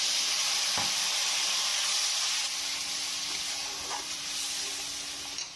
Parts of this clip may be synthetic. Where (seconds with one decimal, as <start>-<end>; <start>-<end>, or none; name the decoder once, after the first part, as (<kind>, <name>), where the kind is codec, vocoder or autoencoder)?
none